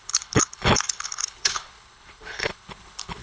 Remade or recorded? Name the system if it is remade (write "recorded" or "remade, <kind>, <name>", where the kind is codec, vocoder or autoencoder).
remade, codec, HILCodec